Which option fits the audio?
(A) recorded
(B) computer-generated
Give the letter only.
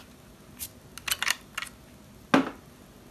A